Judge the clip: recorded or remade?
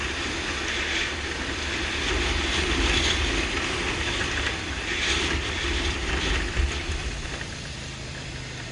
remade